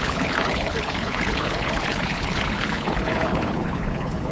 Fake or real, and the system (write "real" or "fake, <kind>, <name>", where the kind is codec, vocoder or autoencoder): fake, codec, HILCodec